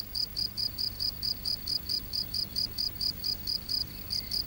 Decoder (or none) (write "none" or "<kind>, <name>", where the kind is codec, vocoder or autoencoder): vocoder, Vocos